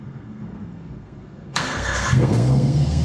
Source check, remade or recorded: remade